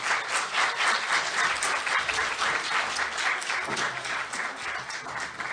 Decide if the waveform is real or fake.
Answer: real